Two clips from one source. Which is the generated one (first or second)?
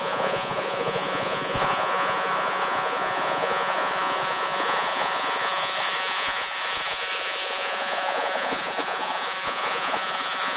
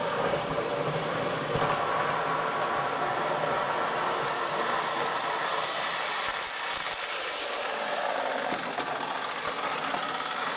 first